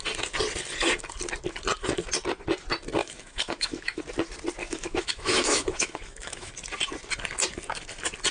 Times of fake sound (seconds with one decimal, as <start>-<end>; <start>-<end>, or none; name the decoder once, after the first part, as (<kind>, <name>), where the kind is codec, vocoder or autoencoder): 3.0-4.0 (autoencoder, DAC-VAE); 4.6-6.5

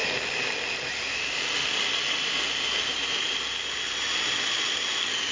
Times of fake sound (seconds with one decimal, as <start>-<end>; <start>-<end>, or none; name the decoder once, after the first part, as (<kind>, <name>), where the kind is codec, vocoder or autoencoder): 0.0-3.2 (vocoder, BigVGAN v2)

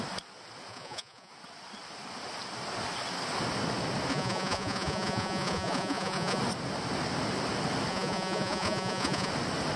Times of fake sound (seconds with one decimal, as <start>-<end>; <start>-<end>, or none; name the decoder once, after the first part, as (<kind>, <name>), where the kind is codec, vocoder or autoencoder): 0.7-1.3 (vocoder, Vocos); 4.1-6.4; 7.9-9.3